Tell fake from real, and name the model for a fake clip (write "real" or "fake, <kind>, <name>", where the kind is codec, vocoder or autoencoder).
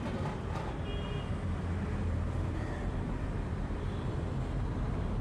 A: fake, vocoder, BigVGAN v2